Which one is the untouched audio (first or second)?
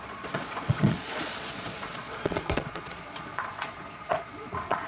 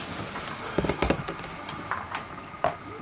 second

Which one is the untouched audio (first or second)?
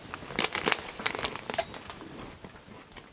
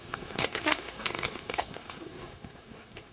first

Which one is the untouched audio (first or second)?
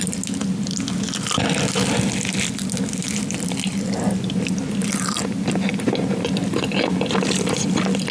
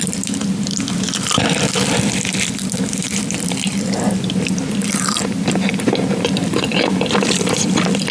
first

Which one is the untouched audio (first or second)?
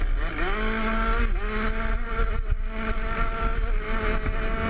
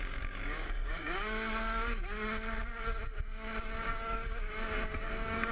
first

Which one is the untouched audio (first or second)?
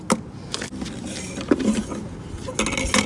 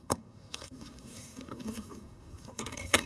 first